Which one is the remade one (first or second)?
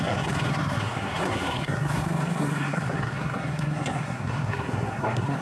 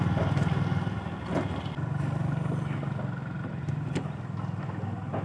first